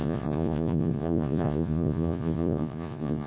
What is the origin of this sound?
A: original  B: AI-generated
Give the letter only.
B